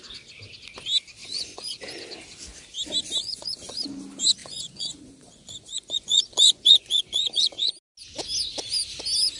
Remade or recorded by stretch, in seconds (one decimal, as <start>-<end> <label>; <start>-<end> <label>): 0.0-1.2 recorded; 1.2-1.8 remade; 1.8-3.2 recorded; 3.2-3.8 remade; 3.8-4.4 recorded; 4.4-7.7 remade; 7.7-9.4 recorded